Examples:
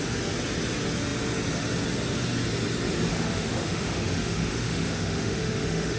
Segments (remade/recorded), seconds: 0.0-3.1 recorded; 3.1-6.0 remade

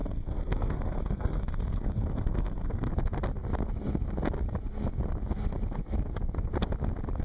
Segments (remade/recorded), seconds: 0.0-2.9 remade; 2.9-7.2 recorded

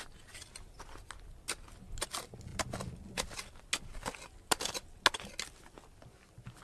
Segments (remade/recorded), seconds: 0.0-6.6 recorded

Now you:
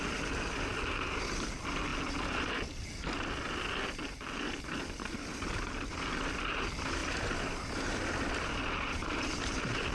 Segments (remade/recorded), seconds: 0.0-7.0 recorded; 7.0-9.4 remade; 9.4-9.9 recorded